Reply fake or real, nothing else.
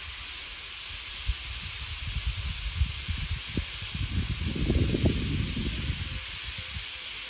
real